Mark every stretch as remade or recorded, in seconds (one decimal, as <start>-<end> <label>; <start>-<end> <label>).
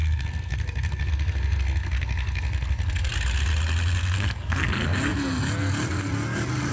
0.0-3.1 remade; 3.1-4.0 recorded; 4.0-5.1 remade; 5.1-6.7 recorded